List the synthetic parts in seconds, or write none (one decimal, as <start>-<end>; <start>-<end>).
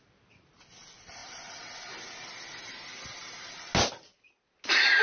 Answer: none